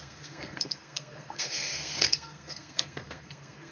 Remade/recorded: remade